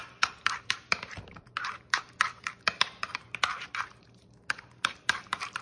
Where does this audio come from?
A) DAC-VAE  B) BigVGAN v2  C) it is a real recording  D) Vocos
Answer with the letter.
B